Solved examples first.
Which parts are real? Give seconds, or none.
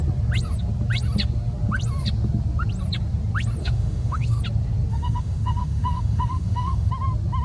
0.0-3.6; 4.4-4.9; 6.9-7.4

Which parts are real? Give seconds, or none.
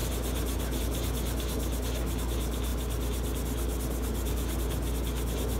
0.0-5.6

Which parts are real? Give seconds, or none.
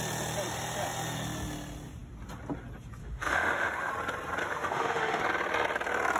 0.0-3.0; 3.9-4.4; 5.2-6.2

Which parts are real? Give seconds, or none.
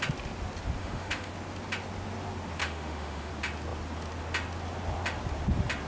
0.0-0.8; 1.3-2.6; 3.3-5.9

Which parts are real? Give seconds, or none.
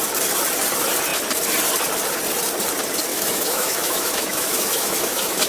0.0-3.1